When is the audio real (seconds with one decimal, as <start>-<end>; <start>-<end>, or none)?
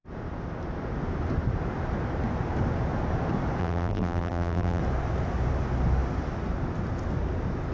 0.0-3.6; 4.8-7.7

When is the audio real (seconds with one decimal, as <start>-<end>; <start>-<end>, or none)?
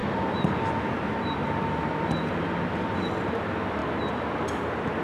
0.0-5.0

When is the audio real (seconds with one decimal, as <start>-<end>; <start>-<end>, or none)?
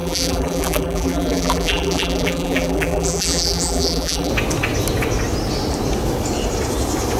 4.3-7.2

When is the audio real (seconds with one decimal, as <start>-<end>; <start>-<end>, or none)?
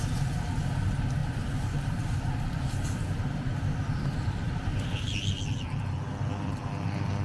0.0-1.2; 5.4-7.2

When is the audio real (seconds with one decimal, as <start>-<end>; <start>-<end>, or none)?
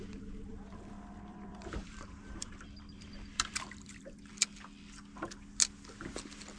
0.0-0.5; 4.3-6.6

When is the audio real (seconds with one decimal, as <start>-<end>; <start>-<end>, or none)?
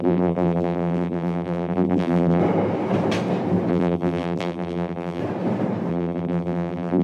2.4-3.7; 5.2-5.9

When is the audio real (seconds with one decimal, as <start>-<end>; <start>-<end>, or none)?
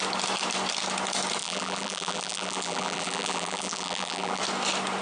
0.0-1.4; 4.4-5.0